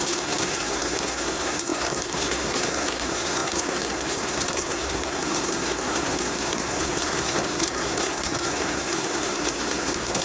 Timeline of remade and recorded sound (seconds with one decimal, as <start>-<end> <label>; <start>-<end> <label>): 0.0-10.2 remade